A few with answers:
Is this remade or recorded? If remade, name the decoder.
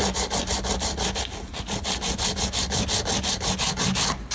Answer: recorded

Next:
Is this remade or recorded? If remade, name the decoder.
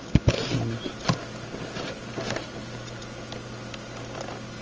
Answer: recorded